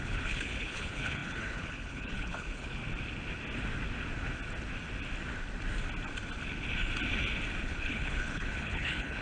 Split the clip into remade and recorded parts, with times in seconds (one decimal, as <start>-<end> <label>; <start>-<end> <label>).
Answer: 0.0-2.8 remade; 2.8-7.6 recorded; 7.6-9.2 remade